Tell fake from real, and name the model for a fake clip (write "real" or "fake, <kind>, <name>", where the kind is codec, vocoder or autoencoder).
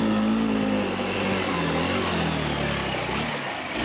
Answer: real